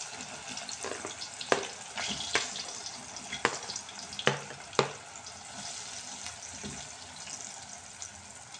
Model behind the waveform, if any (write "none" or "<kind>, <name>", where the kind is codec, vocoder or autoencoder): none